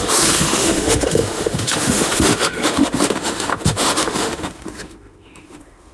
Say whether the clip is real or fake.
fake